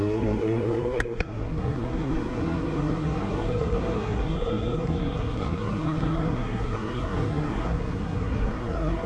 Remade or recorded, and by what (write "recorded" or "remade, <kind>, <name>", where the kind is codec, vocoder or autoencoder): remade, codec, SNAC